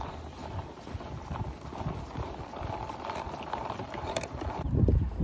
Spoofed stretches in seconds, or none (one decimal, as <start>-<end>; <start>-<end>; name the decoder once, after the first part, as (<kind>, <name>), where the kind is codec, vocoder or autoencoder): 0.0-0.4 (vocoder, BigVGAN v2); 3.5-5.2